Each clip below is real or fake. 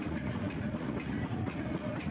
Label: fake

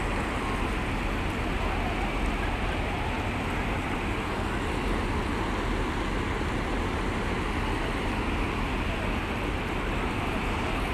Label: real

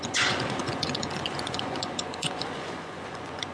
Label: fake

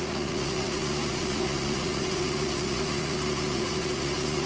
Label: fake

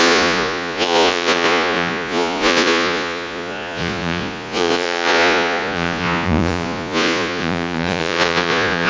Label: fake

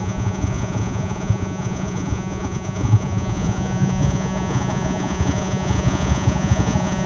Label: fake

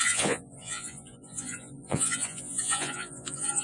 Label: fake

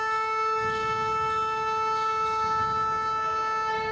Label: real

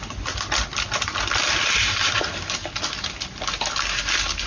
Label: real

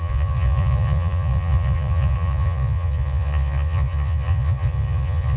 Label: fake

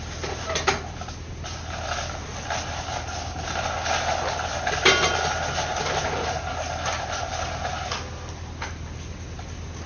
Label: real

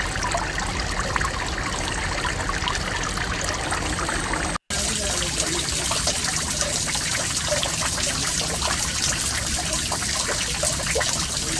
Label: real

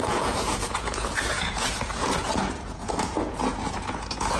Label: fake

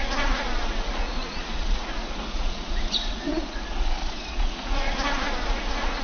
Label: fake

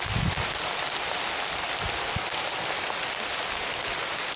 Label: real